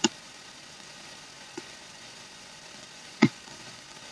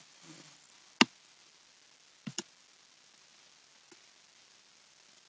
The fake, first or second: first